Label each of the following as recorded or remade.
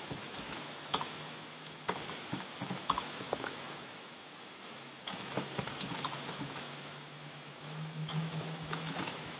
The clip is remade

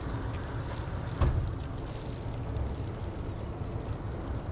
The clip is recorded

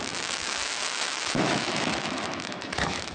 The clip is remade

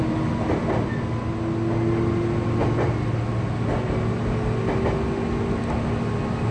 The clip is recorded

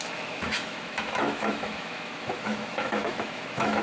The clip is remade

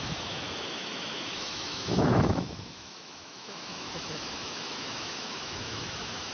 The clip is remade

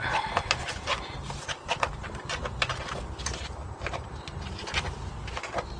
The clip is recorded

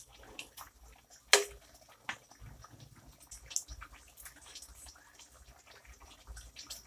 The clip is recorded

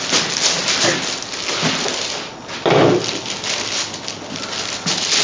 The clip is recorded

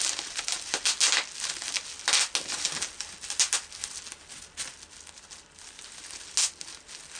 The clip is recorded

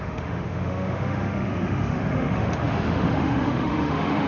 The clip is remade